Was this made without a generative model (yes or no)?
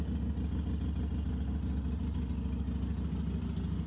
yes